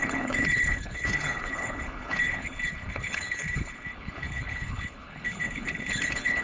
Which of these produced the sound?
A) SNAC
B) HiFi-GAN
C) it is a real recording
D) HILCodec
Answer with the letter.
D